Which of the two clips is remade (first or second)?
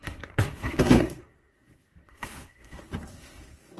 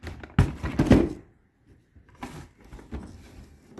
first